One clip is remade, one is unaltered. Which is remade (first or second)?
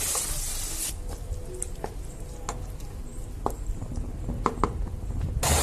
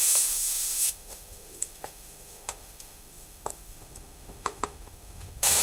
second